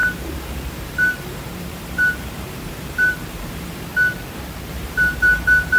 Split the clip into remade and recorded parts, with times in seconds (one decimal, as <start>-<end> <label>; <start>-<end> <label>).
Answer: 0.0-3.9 remade; 3.9-4.7 recorded; 4.7-5.8 remade